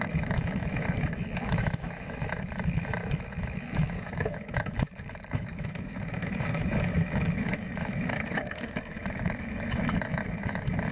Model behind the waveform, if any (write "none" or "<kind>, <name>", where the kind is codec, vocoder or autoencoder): autoencoder, DAC-VAE